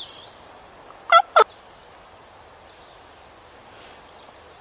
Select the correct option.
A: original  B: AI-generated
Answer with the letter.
B